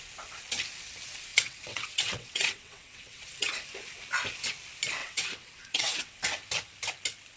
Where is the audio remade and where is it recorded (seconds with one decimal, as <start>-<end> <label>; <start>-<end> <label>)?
0.0-1.3 recorded; 1.3-3.5 remade; 3.5-5.0 recorded; 5.0-6.2 remade; 6.2-7.4 recorded